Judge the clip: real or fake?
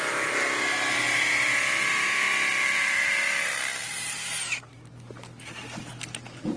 real